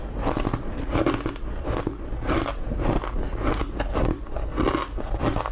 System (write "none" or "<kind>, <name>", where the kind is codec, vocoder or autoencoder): none